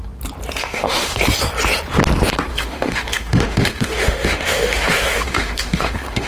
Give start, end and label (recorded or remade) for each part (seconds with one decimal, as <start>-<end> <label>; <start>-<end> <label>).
0.0-0.6 recorded; 0.6-1.2 remade; 1.2-2.5 recorded; 2.5-6.3 remade